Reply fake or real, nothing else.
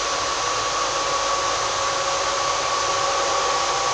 real